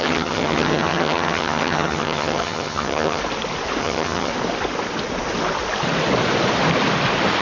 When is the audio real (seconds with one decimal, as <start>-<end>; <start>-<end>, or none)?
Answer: 3.2-3.8; 4.3-7.4